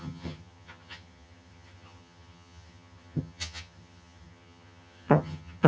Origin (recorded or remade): remade